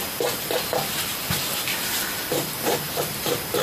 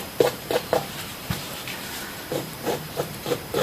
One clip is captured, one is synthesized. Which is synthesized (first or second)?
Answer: second